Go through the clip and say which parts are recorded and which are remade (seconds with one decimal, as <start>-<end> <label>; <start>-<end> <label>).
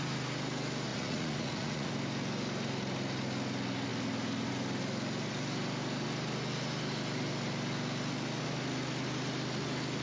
0.0-0.9 recorded; 0.9-1.9 remade; 1.9-10.0 recorded